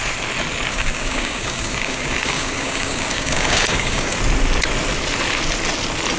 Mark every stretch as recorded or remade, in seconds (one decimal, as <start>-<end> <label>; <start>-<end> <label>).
0.0-0.7 recorded; 0.7-4.2 remade; 4.2-6.2 recorded